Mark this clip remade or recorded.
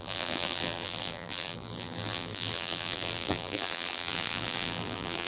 remade